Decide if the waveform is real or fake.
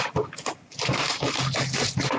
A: real